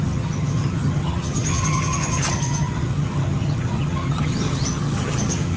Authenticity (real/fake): fake